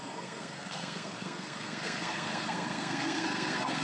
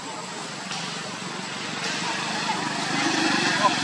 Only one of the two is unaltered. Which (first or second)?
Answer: second